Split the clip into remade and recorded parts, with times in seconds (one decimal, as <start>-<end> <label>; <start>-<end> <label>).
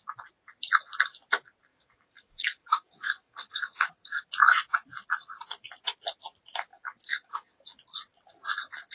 0.0-1.7 recorded; 1.7-4.2 remade; 4.2-6.7 recorded; 6.7-7.6 remade; 7.6-8.9 recorded